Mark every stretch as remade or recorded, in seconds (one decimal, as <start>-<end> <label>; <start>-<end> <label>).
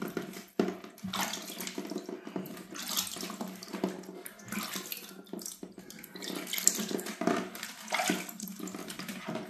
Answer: 0.0-9.5 recorded